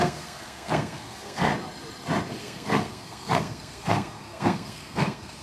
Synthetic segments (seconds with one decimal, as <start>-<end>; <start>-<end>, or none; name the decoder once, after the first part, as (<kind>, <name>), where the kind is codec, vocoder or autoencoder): 0.0-1.5 (codec, SNAC); 2.4-5.4